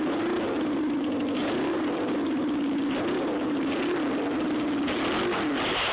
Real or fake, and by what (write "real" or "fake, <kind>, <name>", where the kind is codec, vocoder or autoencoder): real